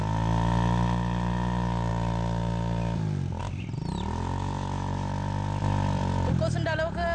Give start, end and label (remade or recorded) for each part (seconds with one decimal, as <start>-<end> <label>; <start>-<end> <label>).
0.0-5.6 recorded; 5.6-6.3 remade; 6.3-7.1 recorded